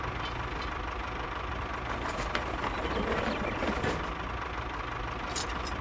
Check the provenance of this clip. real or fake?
real